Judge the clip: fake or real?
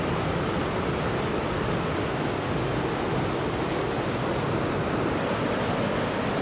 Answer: real